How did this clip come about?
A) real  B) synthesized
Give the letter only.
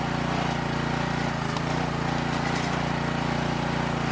A